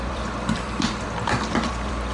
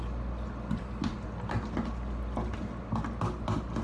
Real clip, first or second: second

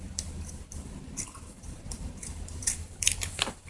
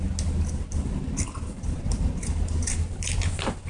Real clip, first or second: second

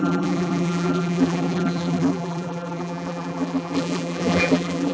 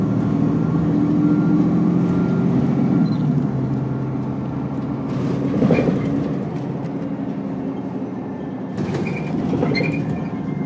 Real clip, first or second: second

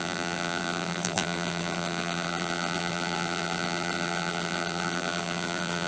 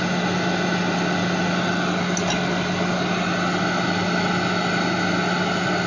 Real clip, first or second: second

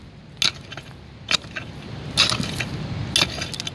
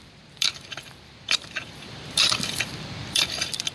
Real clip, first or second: first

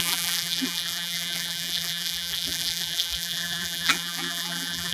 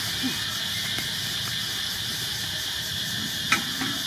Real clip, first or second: second